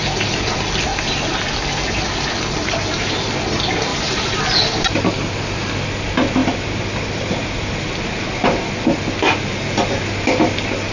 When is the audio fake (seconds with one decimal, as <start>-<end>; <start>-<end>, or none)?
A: 3.9-5.1; 6.4-8.0